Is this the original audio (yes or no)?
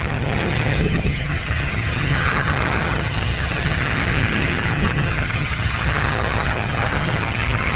no